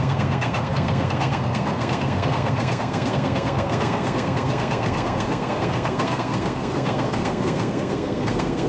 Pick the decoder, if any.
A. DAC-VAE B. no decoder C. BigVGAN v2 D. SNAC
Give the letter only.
D